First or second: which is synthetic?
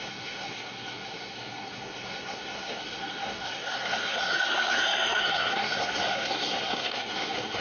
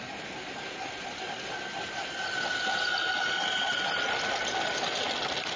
first